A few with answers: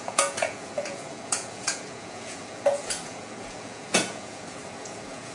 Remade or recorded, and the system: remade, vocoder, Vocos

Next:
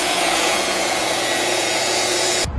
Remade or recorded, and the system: remade, vocoder, Vocos